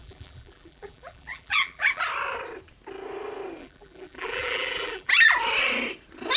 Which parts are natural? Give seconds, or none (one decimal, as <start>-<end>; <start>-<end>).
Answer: 2.0-3.6; 5.1-6.4